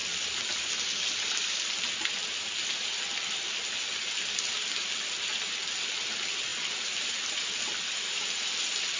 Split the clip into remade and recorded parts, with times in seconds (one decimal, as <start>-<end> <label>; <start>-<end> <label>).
0.0-2.9 remade; 2.9-6.5 recorded; 6.5-8.5 remade; 8.5-9.0 recorded